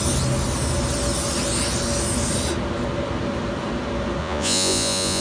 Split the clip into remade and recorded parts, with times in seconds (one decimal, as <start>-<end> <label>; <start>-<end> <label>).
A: 0.0-4.2 recorded; 4.2-5.2 remade